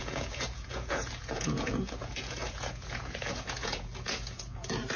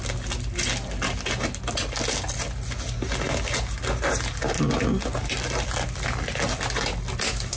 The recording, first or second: second